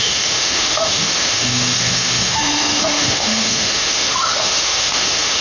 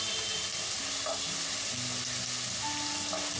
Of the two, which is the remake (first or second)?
first